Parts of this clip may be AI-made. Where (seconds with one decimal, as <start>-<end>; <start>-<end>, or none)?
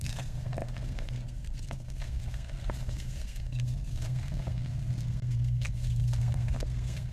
0.0-7.1